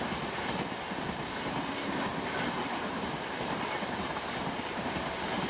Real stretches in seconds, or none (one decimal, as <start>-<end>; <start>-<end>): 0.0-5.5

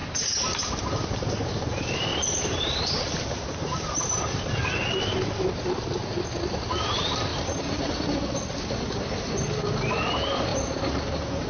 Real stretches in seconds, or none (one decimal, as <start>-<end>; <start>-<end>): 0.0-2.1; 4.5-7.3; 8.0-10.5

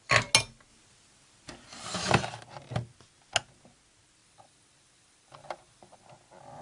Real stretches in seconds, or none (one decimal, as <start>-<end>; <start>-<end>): 0.0-4.2; 6.0-6.6

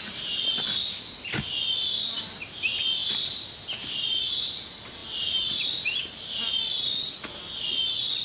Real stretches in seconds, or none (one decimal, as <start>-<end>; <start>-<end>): 0.0-3.0; 4.3-8.2